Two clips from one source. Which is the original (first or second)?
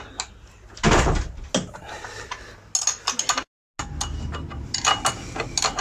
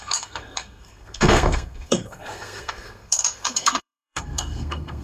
first